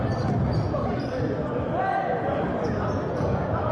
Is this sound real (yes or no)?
yes